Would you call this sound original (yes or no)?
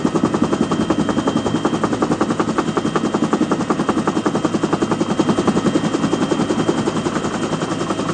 yes